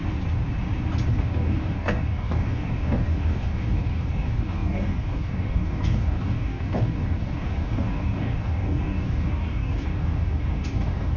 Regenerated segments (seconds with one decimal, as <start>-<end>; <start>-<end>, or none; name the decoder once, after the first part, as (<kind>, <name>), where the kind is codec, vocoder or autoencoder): 1.1-11.2 (codec, DAC)